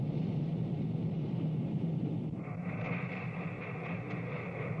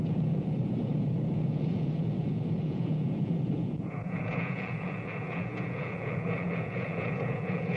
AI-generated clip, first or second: second